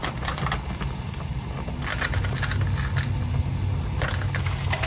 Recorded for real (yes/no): yes